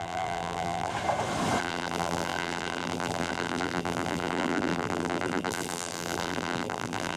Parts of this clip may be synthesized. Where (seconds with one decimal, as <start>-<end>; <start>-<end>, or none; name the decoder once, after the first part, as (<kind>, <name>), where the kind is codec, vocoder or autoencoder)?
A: 0.0-0.9 (vocoder, BigVGAN v2); 1.6-7.2